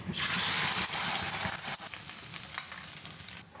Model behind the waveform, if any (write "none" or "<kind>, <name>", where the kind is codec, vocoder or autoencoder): none